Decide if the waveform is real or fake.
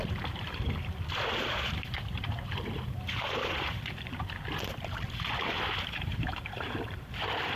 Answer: fake